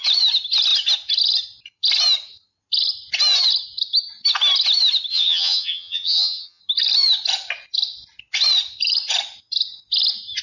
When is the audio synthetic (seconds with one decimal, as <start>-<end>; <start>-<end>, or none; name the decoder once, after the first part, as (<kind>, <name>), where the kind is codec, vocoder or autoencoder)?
5.1-6.6 (vocoder, HiFi-GAN)